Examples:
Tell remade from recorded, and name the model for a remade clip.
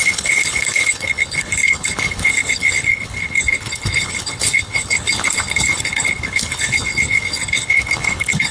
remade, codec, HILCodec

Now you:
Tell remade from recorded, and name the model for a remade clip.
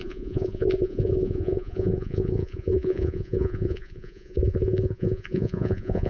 remade, vocoder, Vocos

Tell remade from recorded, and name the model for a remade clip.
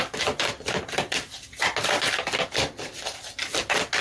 recorded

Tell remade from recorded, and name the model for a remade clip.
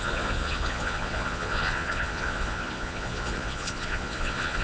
remade, vocoder, Vocos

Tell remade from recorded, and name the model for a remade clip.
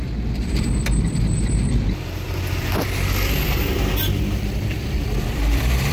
remade, vocoder, BigVGAN v2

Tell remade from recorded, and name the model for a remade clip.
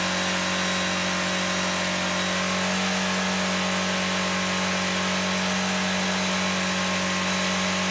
recorded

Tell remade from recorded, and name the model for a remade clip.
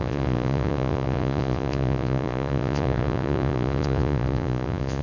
remade, vocoder, Vocos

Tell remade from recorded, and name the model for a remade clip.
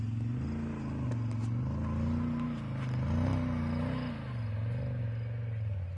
recorded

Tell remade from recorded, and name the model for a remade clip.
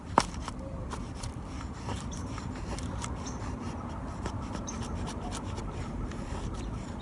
remade, vocoder, BigVGAN v2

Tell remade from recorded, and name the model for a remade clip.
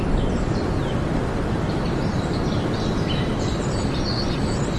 recorded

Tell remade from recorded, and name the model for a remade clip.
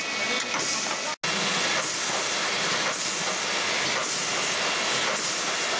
recorded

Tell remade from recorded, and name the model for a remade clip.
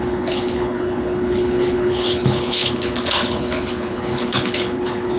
remade, codec, HILCodec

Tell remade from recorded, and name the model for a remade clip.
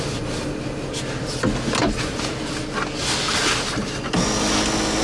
recorded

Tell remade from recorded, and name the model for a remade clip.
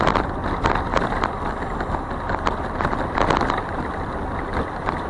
recorded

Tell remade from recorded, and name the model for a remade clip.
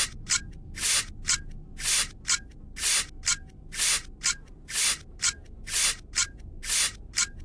recorded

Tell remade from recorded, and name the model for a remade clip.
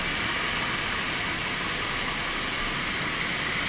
recorded